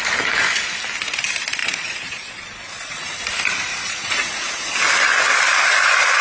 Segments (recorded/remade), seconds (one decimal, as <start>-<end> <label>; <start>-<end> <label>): 0.0-1.6 recorded; 1.6-3.1 remade; 3.1-3.7 recorded; 3.7-4.3 remade; 4.3-6.2 recorded

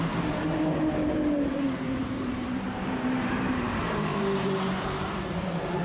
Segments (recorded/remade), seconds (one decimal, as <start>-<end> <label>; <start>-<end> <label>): 0.0-5.8 remade

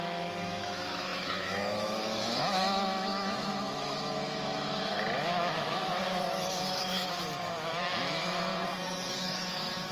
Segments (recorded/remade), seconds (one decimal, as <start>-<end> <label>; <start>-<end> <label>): 0.0-8.5 remade; 8.5-9.2 recorded; 9.2-9.9 remade

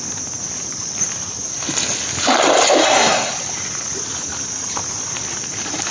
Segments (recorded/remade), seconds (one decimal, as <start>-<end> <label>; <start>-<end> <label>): 0.0-2.8 recorded; 2.8-3.3 remade; 3.3-5.9 recorded

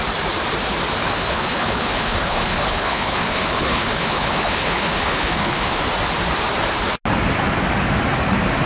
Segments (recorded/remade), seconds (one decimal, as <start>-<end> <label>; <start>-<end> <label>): 0.0-1.0 recorded; 1.0-5.8 remade; 5.8-8.7 recorded